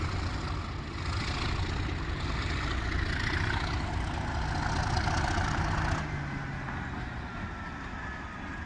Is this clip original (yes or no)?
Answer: yes